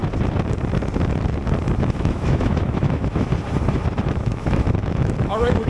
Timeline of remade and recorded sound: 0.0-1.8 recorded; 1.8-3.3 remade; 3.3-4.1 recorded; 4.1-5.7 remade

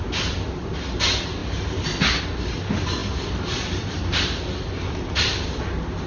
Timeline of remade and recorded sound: 0.0-6.1 recorded

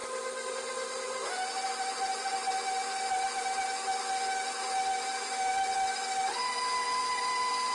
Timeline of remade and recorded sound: 0.0-7.7 recorded